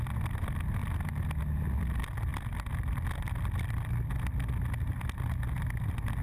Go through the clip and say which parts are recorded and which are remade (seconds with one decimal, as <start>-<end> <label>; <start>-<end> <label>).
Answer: 0.0-6.2 recorded